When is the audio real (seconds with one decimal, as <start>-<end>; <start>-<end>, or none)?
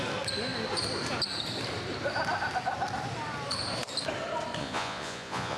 0.0-4.6